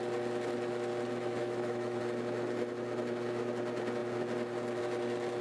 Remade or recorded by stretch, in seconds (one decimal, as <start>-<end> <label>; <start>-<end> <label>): 0.0-1.4 recorded; 1.4-2.0 remade; 2.0-5.4 recorded